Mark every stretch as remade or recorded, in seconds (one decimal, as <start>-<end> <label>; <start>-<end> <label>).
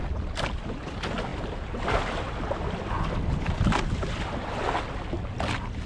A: 0.0-5.9 recorded